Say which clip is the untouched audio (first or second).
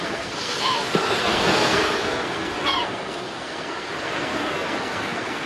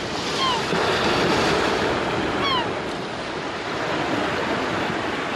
second